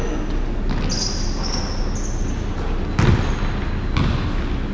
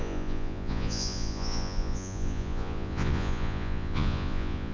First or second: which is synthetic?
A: second